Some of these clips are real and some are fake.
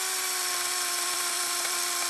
real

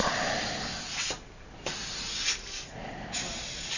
real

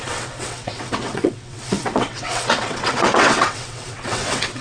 fake